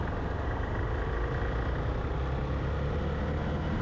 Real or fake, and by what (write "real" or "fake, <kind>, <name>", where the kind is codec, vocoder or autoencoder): real